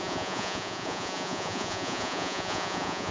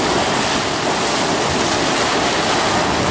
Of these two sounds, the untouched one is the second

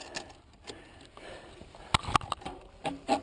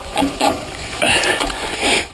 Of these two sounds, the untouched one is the first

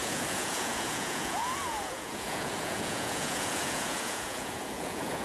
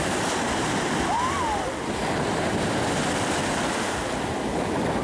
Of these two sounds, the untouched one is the second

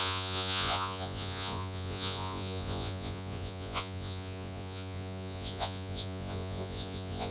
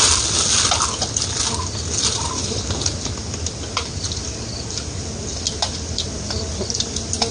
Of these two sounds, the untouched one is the second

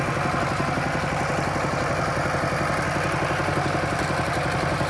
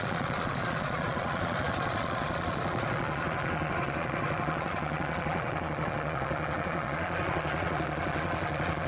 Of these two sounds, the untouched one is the first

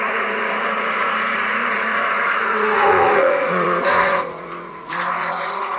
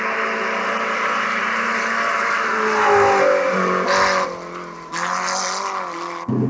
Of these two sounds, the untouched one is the second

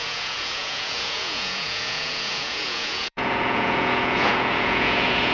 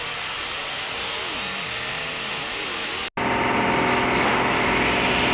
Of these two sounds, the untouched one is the second